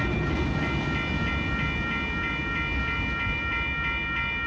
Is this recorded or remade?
recorded